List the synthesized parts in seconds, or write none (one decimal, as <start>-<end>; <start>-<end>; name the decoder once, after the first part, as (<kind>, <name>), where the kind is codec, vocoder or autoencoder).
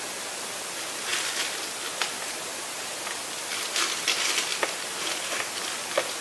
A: none